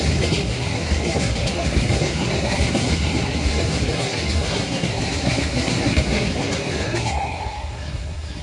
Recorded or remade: remade